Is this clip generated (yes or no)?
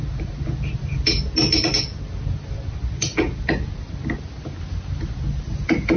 no